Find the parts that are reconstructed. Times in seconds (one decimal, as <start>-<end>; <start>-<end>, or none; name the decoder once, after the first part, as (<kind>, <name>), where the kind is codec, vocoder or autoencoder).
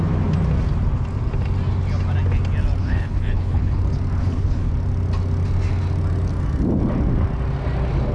2.8-3.8 (codec, HILCodec); 4.2-4.7